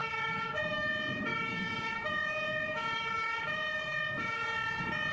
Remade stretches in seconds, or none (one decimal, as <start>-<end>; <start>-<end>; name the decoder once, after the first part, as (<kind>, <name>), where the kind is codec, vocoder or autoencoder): 0.0-0.9 (autoencoder, DAC-VAE); 1.3-4.4